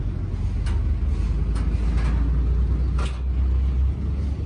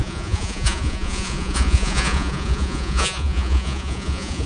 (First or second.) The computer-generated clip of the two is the second